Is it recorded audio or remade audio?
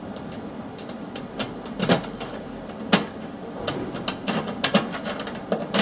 recorded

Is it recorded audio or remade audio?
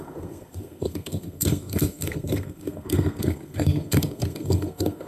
remade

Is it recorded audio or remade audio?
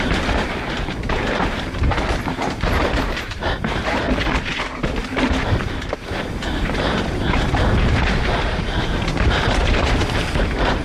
remade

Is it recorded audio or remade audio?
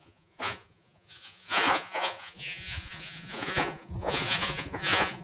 remade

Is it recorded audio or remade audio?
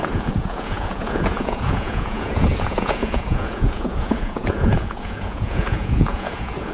remade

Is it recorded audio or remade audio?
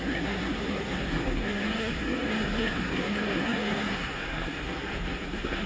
remade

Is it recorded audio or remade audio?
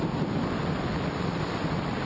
recorded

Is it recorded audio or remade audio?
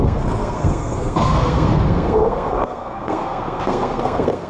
remade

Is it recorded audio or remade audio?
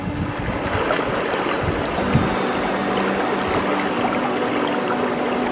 recorded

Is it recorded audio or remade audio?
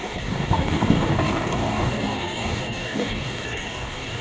remade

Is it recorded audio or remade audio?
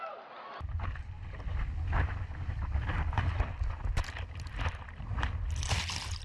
recorded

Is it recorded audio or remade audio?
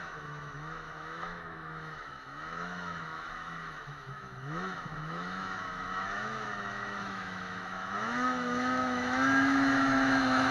remade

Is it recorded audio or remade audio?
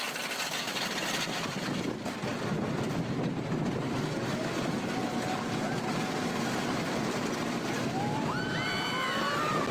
recorded